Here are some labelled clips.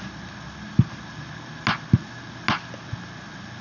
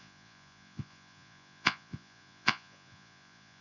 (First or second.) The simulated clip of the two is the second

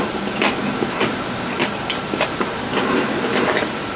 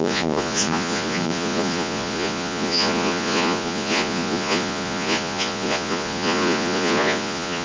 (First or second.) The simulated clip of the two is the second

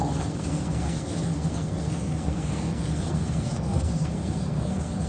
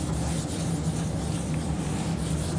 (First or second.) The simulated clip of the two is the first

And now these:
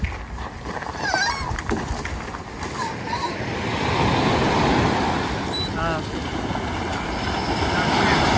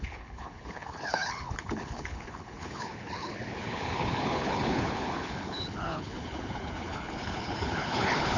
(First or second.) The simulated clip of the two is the second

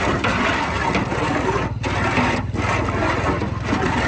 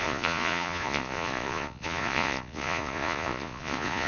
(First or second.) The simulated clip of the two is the second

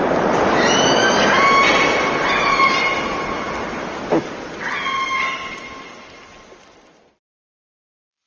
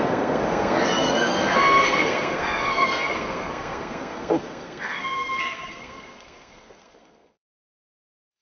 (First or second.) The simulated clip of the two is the second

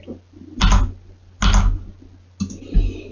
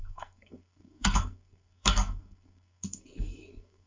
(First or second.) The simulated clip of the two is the second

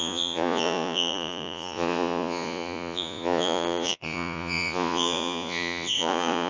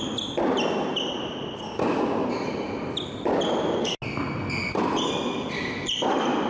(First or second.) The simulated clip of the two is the first